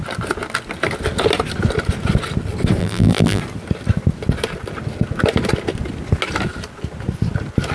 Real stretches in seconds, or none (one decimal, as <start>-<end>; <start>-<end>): 0.0-2.8; 3.4-7.7